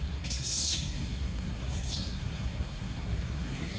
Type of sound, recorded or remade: remade